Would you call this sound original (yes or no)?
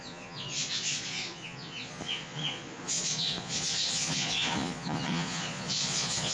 no